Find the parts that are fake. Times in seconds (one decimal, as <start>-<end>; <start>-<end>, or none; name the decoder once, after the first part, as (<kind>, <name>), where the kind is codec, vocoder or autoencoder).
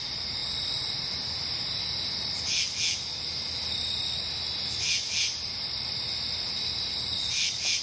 none